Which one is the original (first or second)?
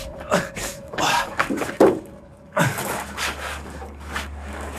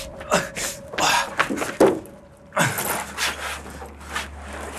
second